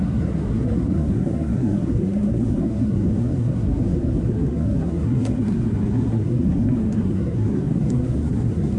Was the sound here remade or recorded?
remade